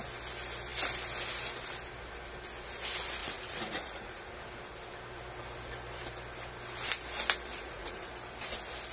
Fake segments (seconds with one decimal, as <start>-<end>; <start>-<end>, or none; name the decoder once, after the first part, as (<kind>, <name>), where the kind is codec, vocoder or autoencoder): 3.2-4.3 (vocoder, Vocos); 7.5-8.1